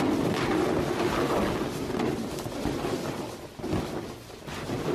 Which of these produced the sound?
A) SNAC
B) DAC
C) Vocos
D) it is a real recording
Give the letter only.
D